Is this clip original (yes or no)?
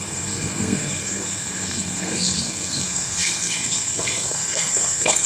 no